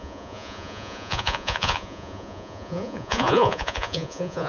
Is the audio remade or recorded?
remade